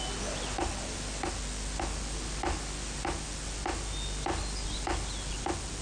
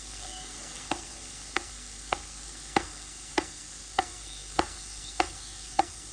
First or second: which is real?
first